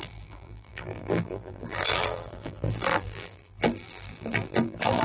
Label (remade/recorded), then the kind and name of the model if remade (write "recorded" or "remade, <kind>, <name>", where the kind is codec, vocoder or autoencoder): remade, vocoder, BigVGAN v2